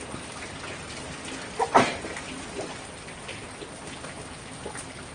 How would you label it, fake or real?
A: real